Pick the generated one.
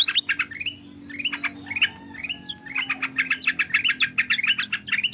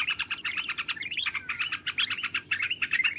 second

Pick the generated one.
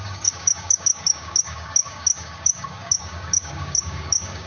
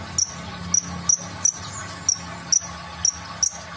first